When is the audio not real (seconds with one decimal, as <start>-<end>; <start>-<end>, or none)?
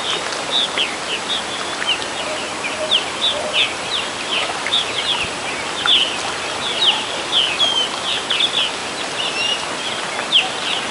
4.3-5.0